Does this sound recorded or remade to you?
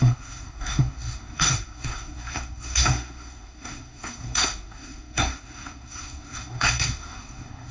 remade